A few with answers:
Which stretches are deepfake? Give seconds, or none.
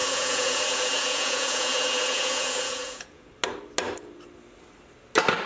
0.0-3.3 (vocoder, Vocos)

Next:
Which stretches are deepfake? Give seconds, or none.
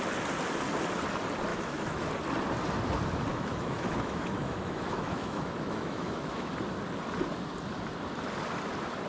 1.5-2.1 (autoencoder, DAC-VAE); 3.3-6.5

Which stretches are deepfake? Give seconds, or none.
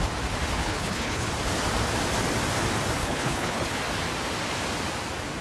0.6-1.3 (codec, HILCodec); 3.0-3.8